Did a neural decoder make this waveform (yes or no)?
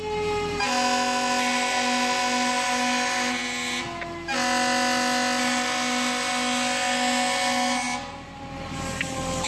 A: no